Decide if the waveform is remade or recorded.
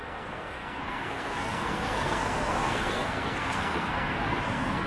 remade